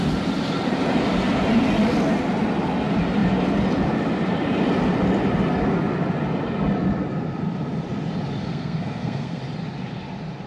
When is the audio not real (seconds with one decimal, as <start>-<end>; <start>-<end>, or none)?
8.4-9.4